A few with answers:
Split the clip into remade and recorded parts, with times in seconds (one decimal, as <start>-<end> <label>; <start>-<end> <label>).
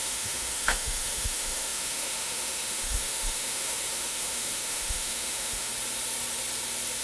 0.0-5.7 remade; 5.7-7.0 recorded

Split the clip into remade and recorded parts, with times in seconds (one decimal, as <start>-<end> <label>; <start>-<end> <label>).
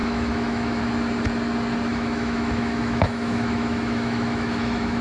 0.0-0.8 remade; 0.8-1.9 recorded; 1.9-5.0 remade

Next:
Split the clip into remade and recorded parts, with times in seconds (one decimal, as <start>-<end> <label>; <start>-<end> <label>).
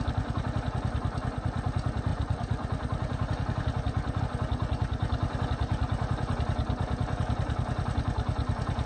0.0-2.1 recorded; 2.1-4.2 remade; 4.2-8.9 recorded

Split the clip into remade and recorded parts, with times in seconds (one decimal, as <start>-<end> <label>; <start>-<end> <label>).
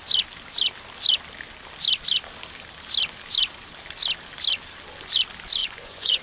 0.0-5.6 recorded; 5.6-6.2 remade